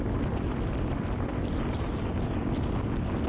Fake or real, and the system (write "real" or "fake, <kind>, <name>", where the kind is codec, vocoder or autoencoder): fake, vocoder, BigVGAN v2